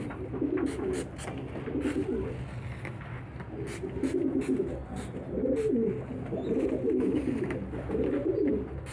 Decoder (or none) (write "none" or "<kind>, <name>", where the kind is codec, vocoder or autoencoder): none